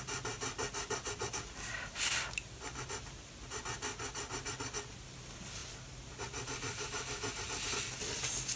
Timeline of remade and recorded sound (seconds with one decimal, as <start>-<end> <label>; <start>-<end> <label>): 0.0-8.6 recorded